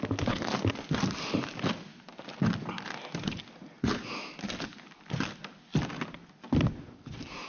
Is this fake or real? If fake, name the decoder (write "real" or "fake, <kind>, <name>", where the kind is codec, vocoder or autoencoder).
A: real